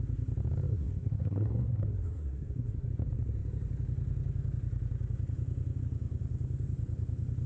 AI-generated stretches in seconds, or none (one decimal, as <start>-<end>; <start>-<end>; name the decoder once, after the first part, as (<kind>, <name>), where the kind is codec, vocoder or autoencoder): 0.7-2.9 (codec, SNAC)